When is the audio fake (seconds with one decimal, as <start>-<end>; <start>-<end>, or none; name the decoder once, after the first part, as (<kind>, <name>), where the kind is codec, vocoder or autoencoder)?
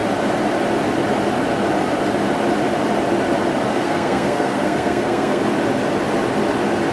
3.7-5.4 (codec, SNAC)